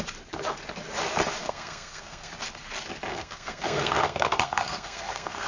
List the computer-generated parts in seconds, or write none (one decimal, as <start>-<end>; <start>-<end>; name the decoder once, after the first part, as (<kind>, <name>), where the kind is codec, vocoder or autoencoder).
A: 1.4-2.3 (codec, SNAC); 3.1-5.5